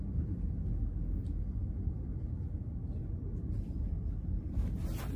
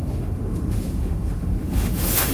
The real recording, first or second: first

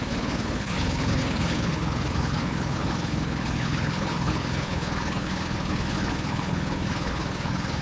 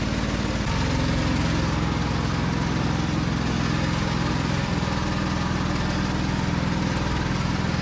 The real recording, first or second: second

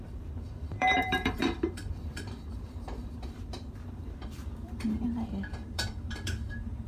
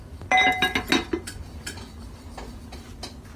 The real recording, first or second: second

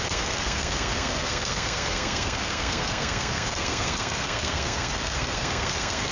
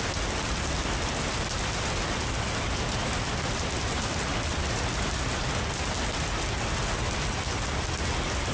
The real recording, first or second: second